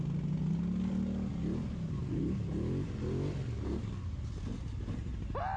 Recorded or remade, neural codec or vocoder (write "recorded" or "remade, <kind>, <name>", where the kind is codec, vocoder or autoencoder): recorded